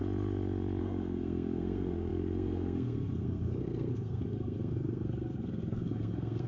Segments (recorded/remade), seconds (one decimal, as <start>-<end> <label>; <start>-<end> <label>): 0.0-0.8 recorded; 0.8-6.5 remade